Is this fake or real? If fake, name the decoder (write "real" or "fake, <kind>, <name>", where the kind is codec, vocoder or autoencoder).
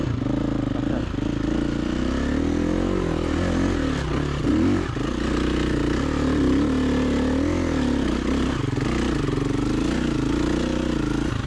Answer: real